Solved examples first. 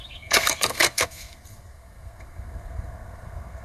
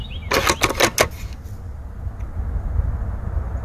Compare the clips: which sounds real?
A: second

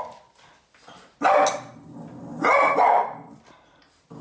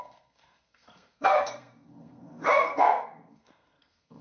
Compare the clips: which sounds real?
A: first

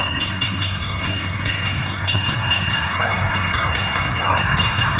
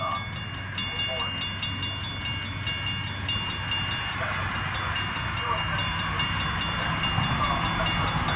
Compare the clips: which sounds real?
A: second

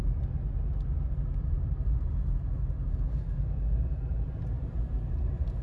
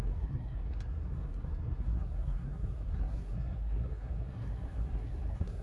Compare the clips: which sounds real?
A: first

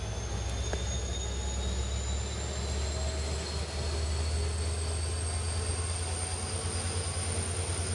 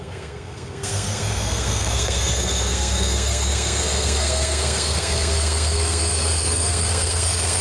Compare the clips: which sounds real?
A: first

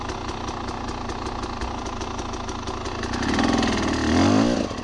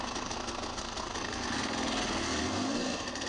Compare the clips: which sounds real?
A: first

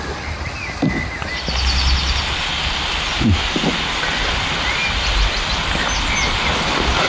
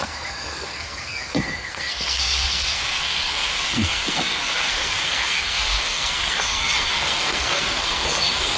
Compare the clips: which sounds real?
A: first